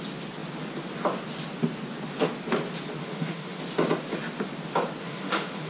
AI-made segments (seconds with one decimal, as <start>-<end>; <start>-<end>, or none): 3.0-3.6; 5.0-5.7